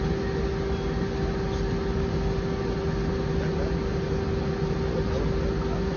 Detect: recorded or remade recorded